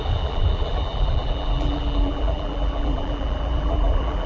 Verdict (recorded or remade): remade